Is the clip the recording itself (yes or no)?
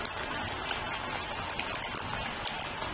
yes